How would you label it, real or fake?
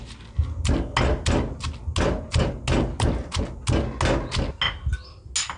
real